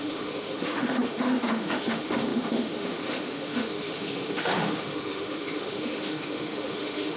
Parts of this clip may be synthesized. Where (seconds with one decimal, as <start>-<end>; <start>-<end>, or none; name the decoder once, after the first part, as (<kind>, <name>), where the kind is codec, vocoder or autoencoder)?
0.0-7.2 (autoencoder, DAC-VAE)